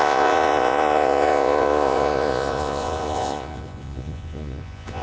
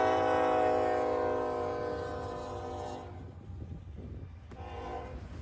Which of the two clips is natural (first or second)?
second